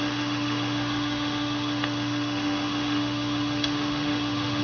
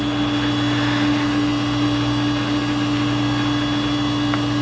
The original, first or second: second